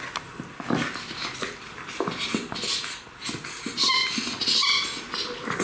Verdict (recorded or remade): recorded